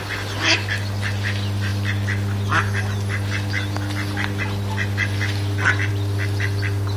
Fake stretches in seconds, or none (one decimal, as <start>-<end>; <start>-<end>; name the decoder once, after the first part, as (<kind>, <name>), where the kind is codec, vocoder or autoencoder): none